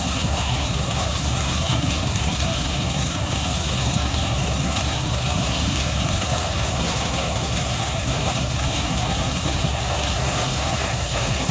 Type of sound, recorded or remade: remade